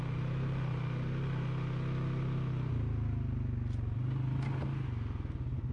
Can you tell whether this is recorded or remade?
recorded